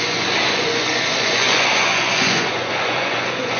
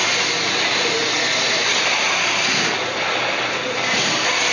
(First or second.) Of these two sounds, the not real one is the first